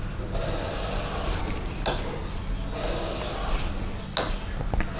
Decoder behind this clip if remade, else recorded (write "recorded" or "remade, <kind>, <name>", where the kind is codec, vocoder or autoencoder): recorded